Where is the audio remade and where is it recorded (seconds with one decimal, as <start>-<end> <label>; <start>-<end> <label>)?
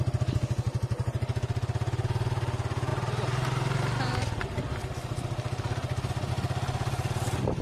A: 0.0-7.6 recorded